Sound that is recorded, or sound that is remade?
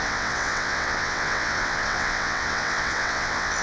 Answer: remade